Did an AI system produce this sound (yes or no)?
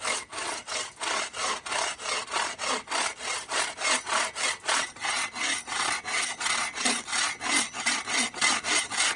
no